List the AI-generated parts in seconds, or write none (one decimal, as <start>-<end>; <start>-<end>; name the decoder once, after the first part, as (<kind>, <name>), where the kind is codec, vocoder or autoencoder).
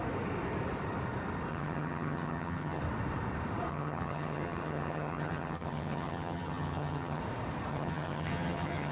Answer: 1.5-2.8 (vocoder, HiFi-GAN); 3.7-7.2; 7.7-8.9